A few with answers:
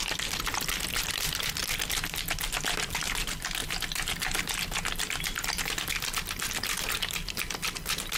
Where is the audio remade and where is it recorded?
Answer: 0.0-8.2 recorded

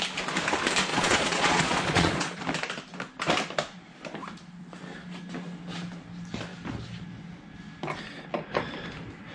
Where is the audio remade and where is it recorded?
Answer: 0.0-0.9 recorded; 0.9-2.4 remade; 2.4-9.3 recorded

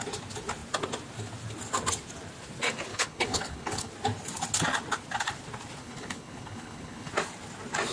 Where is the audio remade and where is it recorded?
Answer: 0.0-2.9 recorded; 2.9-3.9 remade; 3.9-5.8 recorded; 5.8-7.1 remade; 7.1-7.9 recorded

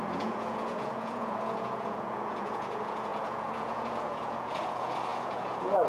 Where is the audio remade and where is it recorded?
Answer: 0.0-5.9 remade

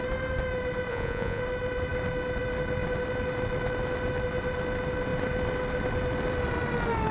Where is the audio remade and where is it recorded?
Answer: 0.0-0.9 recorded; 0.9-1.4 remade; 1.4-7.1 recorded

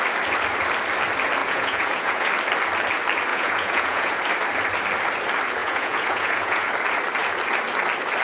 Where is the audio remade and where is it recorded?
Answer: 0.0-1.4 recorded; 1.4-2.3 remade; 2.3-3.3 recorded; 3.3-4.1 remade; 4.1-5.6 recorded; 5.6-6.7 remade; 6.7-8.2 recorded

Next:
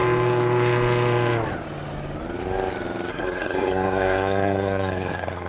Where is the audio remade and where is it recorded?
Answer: 0.0-3.1 recorded; 3.1-5.5 remade